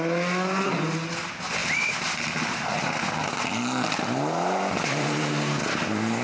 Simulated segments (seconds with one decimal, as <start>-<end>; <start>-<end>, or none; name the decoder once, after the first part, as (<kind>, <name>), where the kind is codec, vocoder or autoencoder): none

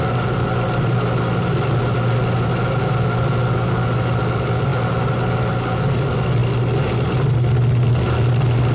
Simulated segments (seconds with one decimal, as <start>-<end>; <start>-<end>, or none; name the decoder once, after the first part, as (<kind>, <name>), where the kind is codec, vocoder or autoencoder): none